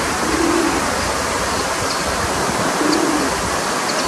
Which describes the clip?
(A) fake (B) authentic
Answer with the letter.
B